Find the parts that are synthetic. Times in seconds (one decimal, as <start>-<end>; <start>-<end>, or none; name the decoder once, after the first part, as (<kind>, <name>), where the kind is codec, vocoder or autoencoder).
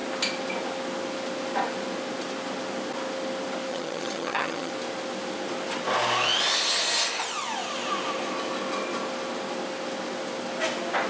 3.7-4.7 (vocoder, HiFi-GAN)